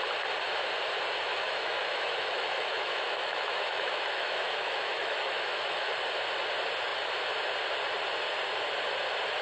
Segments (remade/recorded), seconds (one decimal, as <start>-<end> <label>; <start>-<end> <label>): 0.0-1.3 recorded; 1.3-5.9 remade; 5.9-9.4 recorded